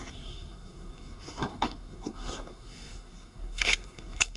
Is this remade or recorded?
remade